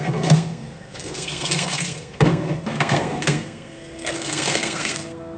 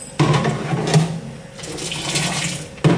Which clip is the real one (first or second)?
second